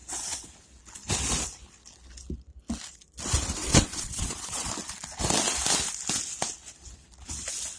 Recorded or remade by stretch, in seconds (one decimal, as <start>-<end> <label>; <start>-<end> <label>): 0.0-0.5 remade; 0.5-3.6 recorded; 3.6-4.7 remade; 4.7-7.8 recorded